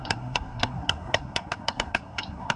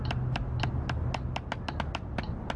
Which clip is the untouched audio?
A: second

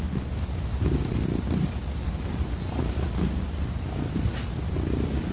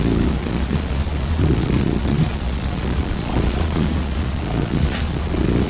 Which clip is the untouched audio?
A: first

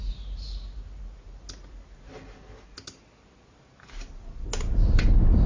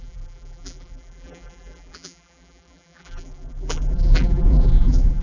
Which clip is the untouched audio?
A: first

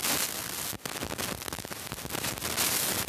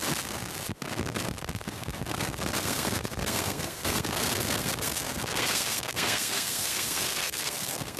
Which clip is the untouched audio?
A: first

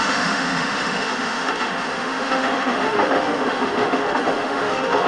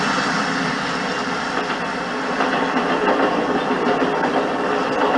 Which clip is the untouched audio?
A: second